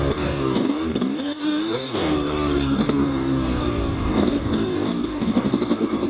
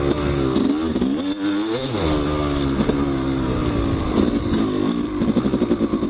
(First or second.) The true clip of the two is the second